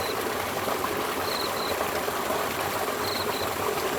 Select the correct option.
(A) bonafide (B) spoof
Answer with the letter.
A